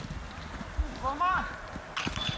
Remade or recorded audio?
recorded